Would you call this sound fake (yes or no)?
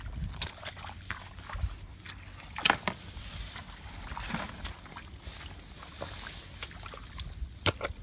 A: no